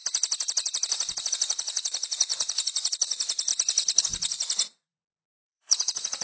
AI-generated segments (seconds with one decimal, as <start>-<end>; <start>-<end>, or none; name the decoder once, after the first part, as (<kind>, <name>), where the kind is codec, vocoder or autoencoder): 1.3-3.5 (vocoder, Vocos); 4.0-6.2